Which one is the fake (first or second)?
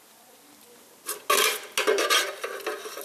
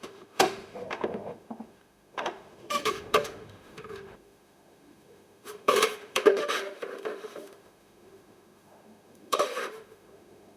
second